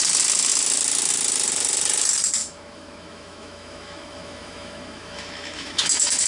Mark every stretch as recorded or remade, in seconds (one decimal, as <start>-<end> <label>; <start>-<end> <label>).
0.0-2.4 recorded; 2.4-6.3 remade

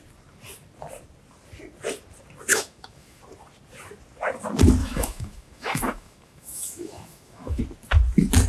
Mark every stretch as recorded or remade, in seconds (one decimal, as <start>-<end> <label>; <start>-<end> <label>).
0.0-2.5 recorded; 2.5-3.2 remade; 3.2-4.8 recorded; 4.8-7.6 remade; 7.6-8.5 recorded

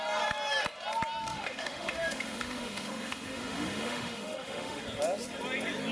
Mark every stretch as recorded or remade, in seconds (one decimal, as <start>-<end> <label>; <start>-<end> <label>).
0.0-1.3 recorded; 1.3-4.8 remade; 4.8-5.9 recorded

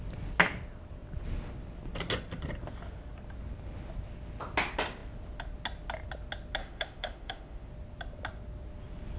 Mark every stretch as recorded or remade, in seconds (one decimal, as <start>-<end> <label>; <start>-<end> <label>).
0.0-6.6 recorded; 6.6-7.7 remade; 7.7-9.2 recorded

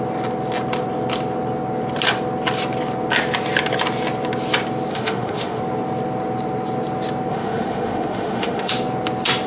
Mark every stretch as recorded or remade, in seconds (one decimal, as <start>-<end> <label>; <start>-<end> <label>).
0.0-4.9 recorded; 4.9-5.6 remade; 5.6-7.3 recorded; 7.3-8.7 remade; 8.7-9.5 recorded

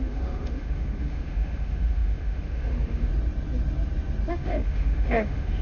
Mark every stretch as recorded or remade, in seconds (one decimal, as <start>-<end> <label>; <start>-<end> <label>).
0.0-3.1 remade; 3.1-4.3 recorded; 4.3-5.6 remade